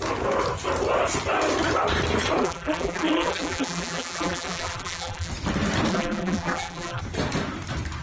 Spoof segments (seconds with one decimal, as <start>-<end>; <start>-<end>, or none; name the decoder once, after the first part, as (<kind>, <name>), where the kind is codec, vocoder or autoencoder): 2.4-5.3 (vocoder, BigVGAN v2); 5.9-7.0